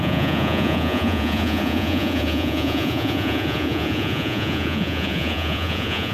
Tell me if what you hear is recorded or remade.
remade